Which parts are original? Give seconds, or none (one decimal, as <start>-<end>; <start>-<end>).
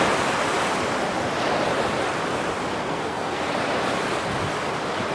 0.0-2.8; 3.4-5.1